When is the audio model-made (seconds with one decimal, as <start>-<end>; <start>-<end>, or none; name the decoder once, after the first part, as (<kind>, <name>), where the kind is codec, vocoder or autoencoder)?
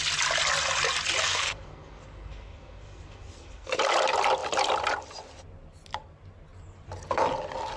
1.2-3.8 (codec, SNAC)